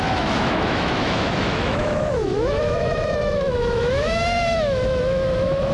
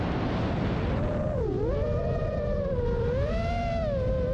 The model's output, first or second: first